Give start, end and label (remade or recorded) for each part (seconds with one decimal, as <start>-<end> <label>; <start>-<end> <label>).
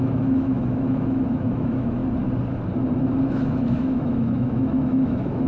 0.0-2.0 remade; 2.0-3.2 recorded; 3.2-5.5 remade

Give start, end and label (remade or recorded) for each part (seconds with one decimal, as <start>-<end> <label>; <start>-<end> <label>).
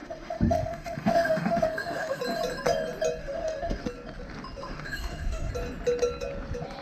0.0-2.2 remade; 2.2-3.2 recorded; 3.2-3.8 remade; 3.8-4.6 recorded; 4.6-5.5 remade; 5.5-6.8 recorded